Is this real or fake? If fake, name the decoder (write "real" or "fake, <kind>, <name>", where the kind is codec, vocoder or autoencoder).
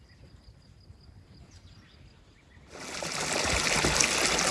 real